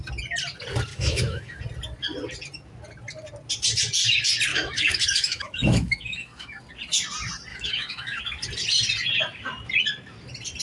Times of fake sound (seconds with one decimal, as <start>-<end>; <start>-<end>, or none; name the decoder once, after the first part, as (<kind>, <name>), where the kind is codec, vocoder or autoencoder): 0.9-1.6 (autoencoder, DAC-VAE); 4.5-6.6; 7.5-8.2